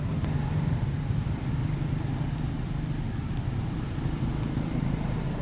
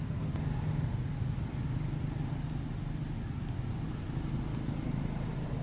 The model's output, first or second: first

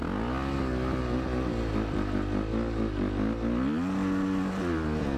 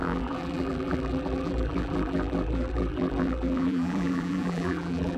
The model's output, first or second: second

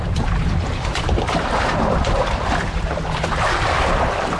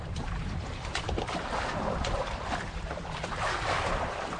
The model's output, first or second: second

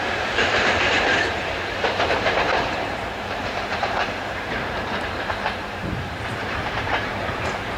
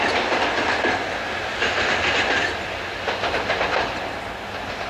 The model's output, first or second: first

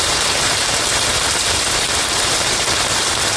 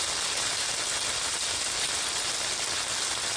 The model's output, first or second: first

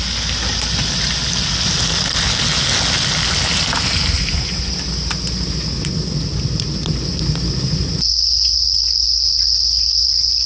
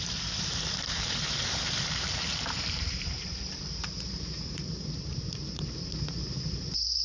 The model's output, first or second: second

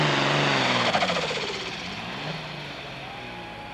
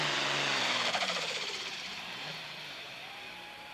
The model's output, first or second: second